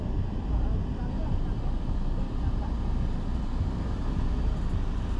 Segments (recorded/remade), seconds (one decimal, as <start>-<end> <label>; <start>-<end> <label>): 0.0-5.2 recorded